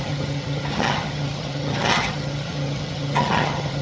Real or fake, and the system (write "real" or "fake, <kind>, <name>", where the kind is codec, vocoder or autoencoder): fake, vocoder, HiFi-GAN